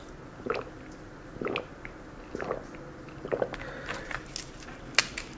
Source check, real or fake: real